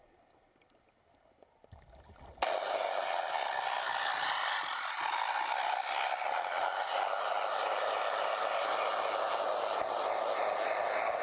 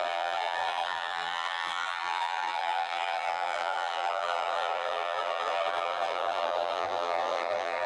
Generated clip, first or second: second